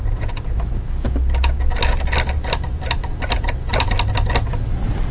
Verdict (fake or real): real